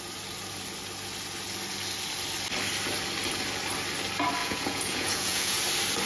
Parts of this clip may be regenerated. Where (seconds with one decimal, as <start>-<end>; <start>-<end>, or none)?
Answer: 4.4-5.6